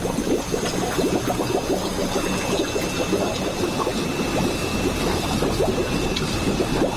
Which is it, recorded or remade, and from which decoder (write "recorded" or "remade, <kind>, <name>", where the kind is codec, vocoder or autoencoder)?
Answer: recorded